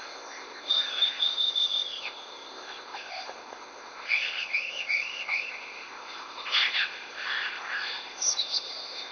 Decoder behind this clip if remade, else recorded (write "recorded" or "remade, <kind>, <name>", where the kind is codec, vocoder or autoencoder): remade, codec, ZipCodec